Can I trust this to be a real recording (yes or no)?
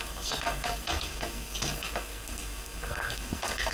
no